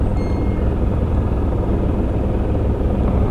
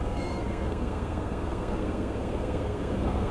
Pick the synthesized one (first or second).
second